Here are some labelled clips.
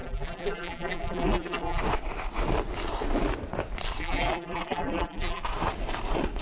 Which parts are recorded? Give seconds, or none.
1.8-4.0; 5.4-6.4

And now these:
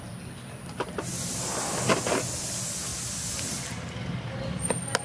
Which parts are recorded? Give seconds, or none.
0.0-5.0

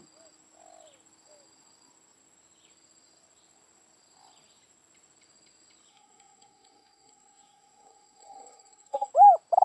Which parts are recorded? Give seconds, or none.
0.0-5.9; 9.1-9.6

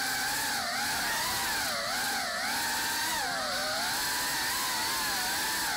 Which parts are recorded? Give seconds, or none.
0.0-5.8

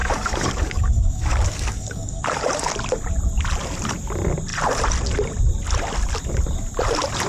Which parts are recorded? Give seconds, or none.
2.2-7.3

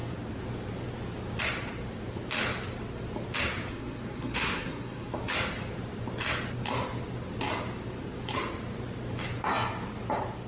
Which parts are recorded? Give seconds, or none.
0.0-3.7; 5.2-10.5

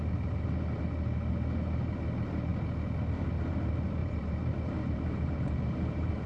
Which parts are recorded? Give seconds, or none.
0.0-4.0

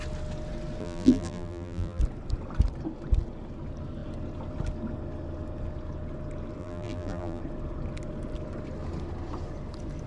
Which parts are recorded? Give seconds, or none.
0.0-0.8; 2.0-6.6; 7.4-10.1